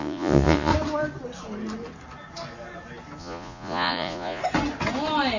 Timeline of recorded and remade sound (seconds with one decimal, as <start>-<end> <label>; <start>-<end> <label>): 0.0-0.7 remade; 0.7-3.2 recorded; 3.2-4.4 remade; 4.4-5.4 recorded